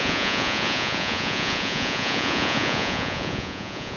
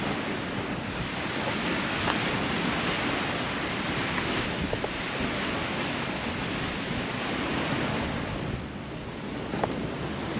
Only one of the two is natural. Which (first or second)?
second